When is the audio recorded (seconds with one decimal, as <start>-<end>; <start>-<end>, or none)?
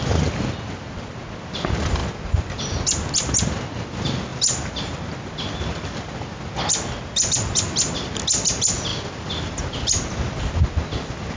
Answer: 0.0-11.4